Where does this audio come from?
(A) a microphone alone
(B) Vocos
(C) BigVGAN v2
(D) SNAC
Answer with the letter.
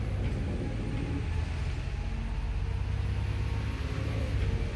A